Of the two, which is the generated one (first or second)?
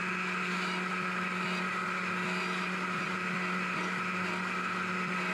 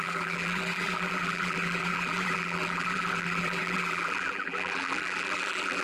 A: second